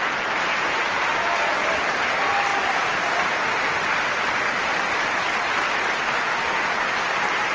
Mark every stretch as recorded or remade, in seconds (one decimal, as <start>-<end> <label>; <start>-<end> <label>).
0.0-7.5 recorded